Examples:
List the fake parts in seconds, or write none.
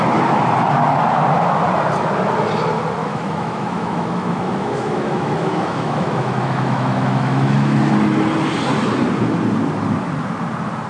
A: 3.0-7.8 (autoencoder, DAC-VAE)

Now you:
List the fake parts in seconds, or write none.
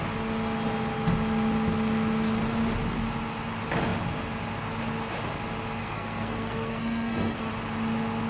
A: 5.8-7.5 (codec, SNAC)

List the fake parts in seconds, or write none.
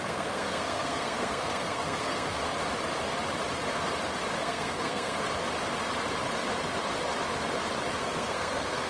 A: 0.0-2.4 (codec, SNAC); 4.4-5.2; 7.9-8.9